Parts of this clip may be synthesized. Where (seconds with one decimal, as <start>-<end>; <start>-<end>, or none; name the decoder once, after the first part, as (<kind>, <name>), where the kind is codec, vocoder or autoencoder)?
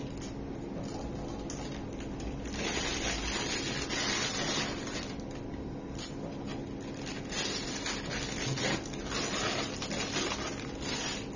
none